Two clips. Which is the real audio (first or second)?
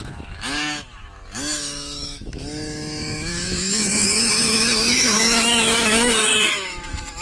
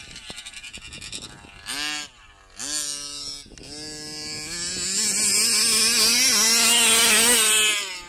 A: second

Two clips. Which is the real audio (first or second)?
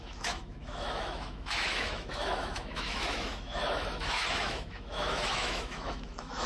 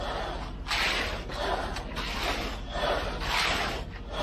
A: second